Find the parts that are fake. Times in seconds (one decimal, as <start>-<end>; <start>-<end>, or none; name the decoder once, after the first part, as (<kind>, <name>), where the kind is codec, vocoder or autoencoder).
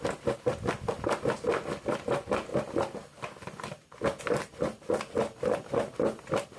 none